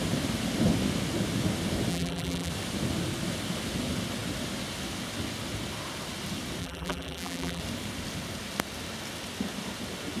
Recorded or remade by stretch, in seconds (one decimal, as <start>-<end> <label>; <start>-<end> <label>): 0.0-1.9 recorded; 1.9-2.5 remade; 2.5-6.6 recorded; 6.6-7.6 remade; 7.6-10.2 recorded